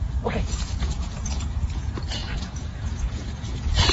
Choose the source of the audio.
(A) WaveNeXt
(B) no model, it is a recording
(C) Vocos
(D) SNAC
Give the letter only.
C